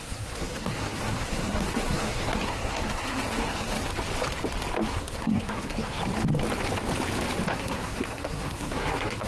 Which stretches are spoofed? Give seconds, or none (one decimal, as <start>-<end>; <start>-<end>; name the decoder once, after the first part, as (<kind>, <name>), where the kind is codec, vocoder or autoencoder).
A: 0.0-3.8 (codec, SNAC); 4.9-6.0; 7.5-9.3